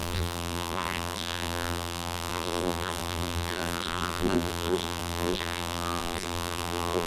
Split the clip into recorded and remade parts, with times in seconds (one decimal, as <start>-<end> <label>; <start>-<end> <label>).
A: 0.0-7.1 remade